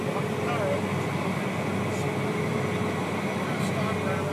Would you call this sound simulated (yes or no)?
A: no